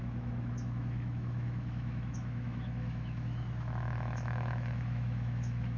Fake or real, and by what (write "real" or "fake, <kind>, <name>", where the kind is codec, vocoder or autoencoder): fake, autoencoder, DAC-VAE